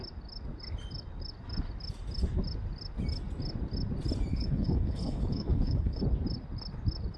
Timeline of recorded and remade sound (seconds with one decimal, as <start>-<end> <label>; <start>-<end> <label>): 0.0-4.3 recorded; 4.3-6.0 remade; 6.0-7.2 recorded